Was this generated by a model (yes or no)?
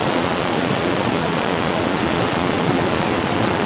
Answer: yes